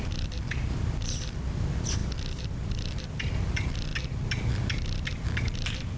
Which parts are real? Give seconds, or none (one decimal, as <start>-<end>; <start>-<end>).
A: 2.0-2.7; 3.9-5.2